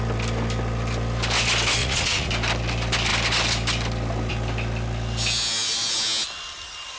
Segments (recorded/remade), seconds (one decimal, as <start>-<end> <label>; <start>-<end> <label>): 0.0-1.8 recorded; 1.8-2.3 remade; 2.3-7.0 recorded

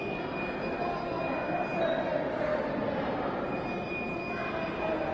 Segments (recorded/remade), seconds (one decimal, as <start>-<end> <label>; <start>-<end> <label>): 0.0-5.1 recorded